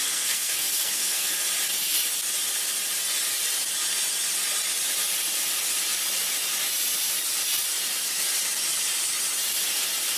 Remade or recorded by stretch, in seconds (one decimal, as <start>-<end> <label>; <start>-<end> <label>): 0.0-1.4 remade; 1.4-10.2 recorded